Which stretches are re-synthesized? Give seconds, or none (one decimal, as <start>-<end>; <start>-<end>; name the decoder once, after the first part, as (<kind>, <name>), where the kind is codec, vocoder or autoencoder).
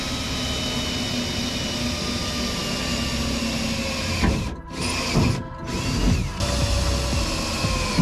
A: none